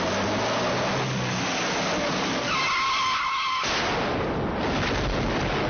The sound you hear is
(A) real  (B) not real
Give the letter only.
A